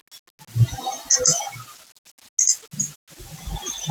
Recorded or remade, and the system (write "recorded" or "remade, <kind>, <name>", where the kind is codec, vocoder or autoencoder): recorded